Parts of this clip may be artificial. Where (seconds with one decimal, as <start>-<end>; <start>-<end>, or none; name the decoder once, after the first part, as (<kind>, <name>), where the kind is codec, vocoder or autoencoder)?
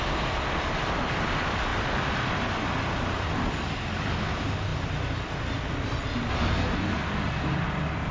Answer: none